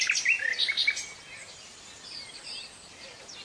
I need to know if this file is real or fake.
real